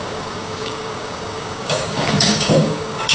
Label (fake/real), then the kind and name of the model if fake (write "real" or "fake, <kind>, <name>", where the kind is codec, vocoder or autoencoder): fake, codec, DAC